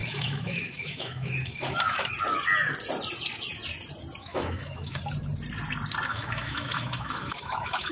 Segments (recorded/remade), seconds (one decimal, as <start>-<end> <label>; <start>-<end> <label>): 0.0-2.1 remade; 2.1-4.2 recorded; 4.2-5.0 remade; 5.0-6.1 recorded; 6.1-7.9 remade